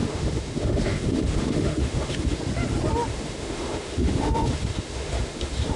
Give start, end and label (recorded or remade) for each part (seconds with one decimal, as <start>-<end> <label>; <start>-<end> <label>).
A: 0.0-2.4 remade; 2.4-3.1 recorded; 3.1-5.8 remade